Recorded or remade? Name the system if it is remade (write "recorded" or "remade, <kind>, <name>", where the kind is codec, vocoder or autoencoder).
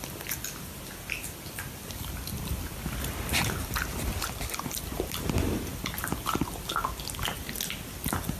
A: recorded